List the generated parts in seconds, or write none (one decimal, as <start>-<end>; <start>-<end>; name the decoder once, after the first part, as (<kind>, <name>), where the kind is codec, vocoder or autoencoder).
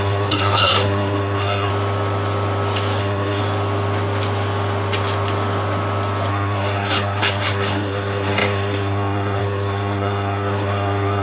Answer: 0.0-1.7 (codec, SNAC); 3.0-3.4; 6.3-11.2